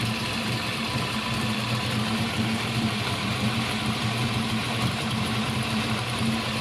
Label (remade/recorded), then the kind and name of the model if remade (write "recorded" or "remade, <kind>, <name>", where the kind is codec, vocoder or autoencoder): remade, vocoder, BigVGAN v2